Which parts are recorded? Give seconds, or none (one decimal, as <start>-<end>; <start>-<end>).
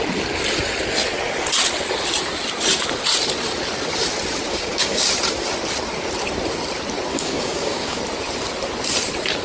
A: 0.0-4.5; 5.1-7.1; 8.0-9.4